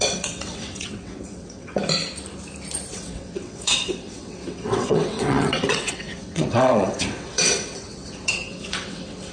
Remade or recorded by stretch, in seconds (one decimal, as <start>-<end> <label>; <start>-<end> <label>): 0.0-1.8 remade; 1.8-2.9 recorded; 2.9-9.3 remade